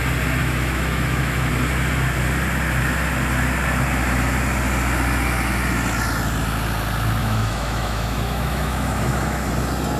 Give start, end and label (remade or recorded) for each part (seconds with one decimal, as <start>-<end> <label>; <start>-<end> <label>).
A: 0.0-0.4 recorded; 0.4-1.5 remade; 1.5-7.2 recorded; 7.2-9.5 remade; 9.5-10.0 recorded